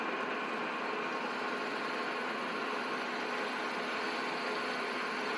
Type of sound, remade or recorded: recorded